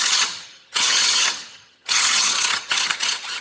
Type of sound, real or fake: fake